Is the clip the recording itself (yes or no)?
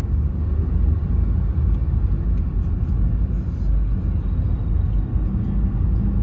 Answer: yes